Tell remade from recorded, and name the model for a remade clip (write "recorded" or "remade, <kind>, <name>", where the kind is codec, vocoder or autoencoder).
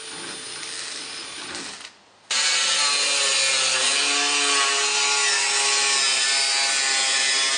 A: recorded